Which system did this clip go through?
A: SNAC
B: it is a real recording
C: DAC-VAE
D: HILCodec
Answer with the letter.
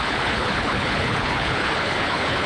D